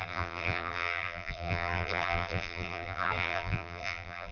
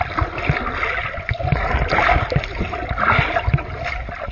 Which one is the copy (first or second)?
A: first